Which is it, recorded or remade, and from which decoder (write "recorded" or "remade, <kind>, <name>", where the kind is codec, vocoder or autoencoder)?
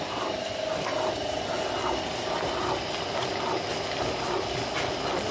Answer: recorded